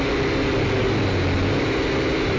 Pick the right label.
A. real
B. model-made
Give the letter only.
A